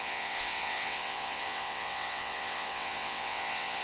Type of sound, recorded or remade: remade